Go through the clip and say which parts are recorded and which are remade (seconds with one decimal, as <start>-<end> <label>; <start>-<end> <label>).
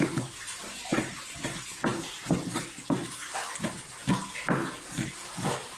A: 0.0-5.8 recorded